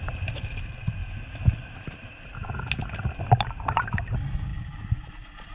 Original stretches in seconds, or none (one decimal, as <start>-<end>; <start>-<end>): 0.0-5.5